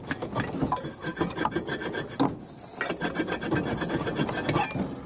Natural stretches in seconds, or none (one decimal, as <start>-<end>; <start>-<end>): 0.0-5.1